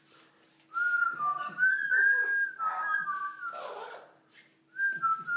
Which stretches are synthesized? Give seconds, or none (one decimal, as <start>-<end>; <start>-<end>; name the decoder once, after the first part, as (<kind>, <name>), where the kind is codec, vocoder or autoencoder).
1.0-1.7 (codec, SNAC)